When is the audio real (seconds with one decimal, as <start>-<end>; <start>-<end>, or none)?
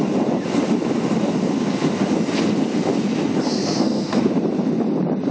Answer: 0.0-3.5; 4.3-5.3